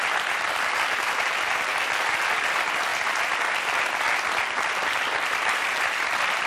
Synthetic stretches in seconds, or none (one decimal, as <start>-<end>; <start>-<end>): 0.0-1.7; 2.3-2.9; 5.4-6.5